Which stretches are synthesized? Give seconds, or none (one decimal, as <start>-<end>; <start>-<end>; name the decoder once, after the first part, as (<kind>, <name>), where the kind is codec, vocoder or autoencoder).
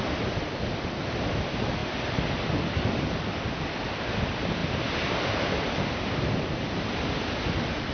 none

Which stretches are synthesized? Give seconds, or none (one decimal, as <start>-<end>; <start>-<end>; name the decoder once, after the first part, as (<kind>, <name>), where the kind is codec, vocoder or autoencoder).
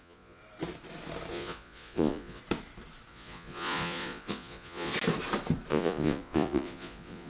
0.0-0.4 (vocoder, Vocos); 1.3-2.4; 3.1-4.9; 5.7-7.3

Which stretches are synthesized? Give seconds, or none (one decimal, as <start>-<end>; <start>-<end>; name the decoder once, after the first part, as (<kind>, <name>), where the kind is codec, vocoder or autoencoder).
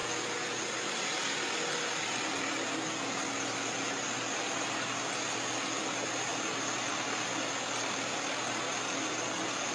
none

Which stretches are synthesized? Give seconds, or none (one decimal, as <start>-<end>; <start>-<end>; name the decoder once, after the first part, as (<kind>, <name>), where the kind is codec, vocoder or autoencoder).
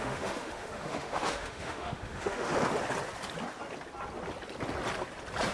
0.0-2.5 (autoencoder, DAC-VAE)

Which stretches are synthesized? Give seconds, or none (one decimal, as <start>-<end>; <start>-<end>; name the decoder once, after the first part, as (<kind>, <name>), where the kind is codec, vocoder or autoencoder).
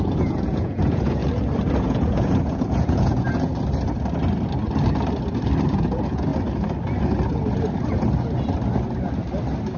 0.0-1.2 (vocoder, Vocos); 1.8-3.5; 5.7-6.3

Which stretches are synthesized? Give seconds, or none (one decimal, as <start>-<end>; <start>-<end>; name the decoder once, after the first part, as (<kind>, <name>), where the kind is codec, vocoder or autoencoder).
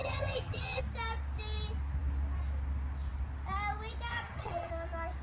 0.0-0.8 (vocoder, HiFi-GAN); 4.1-4.7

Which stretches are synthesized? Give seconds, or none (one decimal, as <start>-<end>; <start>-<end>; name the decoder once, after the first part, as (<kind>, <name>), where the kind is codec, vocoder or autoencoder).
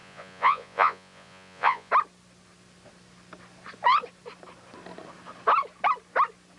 0.0-1.9 (vocoder, Vocos)